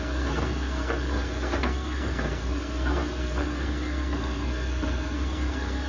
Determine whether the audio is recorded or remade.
remade